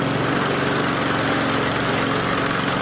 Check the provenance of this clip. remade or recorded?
recorded